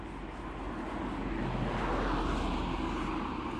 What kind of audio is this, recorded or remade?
recorded